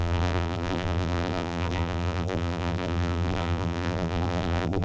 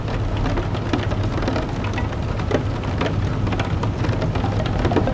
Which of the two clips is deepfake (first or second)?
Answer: first